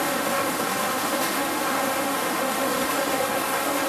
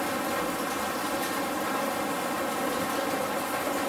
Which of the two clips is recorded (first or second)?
second